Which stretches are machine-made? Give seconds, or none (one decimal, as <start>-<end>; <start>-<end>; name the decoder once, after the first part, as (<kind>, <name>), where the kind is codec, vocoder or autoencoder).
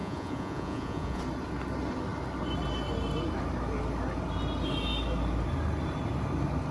0.0-1.2 (vocoder, Vocos)